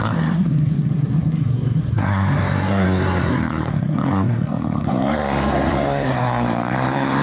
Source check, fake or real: fake